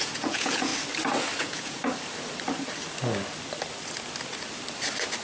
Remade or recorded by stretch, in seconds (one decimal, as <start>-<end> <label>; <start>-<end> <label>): 0.0-0.7 remade; 0.7-1.4 recorded; 1.4-1.8 remade; 1.8-5.2 recorded